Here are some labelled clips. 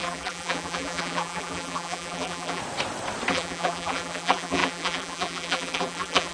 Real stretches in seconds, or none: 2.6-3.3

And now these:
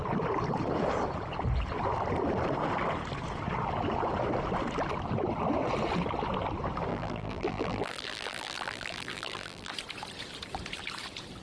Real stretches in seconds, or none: 0.0-6.9; 9.7-11.4

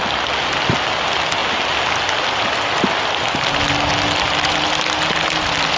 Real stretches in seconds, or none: 0.0-5.8

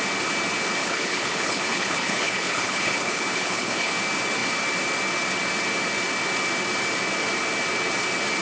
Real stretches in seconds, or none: 0.0-0.8; 3.9-8.4

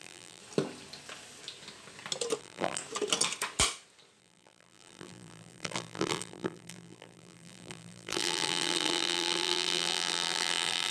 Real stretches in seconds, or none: 0.4-2.4; 2.8-4.2